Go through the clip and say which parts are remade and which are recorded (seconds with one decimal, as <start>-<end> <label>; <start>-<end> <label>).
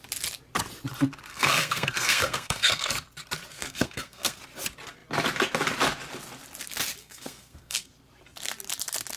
0.0-1.3 recorded; 1.3-2.9 remade; 2.9-3.5 recorded; 3.5-4.4 remade; 4.4-7.0 recorded; 7.0-7.9 remade; 7.9-9.2 recorded